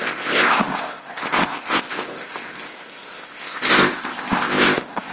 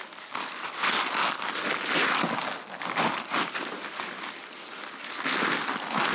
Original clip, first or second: second